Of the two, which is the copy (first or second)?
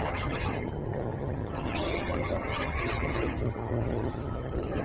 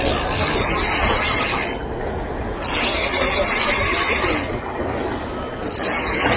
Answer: first